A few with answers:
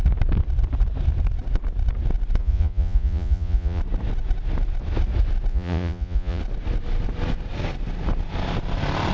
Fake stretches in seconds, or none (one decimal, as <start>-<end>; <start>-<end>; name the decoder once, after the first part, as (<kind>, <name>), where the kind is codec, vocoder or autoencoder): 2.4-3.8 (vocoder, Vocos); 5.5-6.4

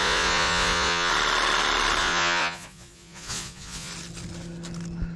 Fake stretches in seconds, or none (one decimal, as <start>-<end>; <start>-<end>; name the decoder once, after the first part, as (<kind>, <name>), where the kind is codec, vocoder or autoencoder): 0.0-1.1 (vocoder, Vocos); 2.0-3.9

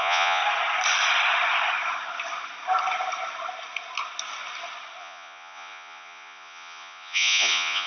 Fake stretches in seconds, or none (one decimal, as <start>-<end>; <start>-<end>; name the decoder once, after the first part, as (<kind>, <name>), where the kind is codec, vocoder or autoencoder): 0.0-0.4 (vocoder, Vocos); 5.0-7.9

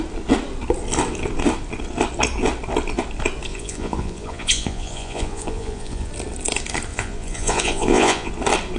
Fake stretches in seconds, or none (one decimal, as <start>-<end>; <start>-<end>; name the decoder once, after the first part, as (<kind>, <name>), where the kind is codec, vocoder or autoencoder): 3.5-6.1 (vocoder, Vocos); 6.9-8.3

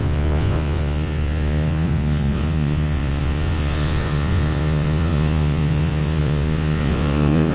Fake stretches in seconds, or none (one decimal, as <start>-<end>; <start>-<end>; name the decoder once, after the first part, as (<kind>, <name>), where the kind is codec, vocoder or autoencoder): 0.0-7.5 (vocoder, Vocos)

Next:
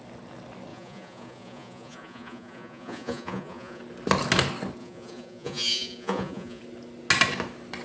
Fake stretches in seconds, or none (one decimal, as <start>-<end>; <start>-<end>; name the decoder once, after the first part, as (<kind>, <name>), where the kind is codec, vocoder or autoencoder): 0.7-3.8 (vocoder, Vocos); 4.8-6.6

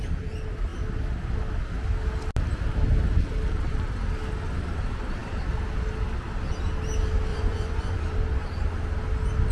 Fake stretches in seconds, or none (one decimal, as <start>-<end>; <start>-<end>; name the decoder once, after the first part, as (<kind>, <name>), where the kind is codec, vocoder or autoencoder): 7.3-8.0 (vocoder, Vocos)

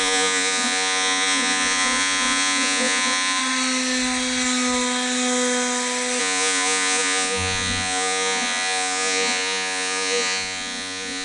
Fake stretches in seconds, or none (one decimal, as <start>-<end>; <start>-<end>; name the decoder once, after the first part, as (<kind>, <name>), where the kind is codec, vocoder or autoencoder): 0.0-3.4 (vocoder, Vocos); 6.2-11.2